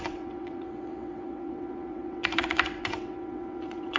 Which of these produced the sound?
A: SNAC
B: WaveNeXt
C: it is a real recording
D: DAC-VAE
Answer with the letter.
B